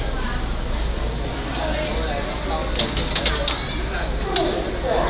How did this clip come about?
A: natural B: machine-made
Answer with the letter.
A